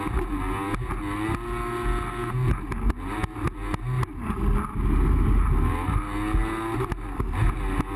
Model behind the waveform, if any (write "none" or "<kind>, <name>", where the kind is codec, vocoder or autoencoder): none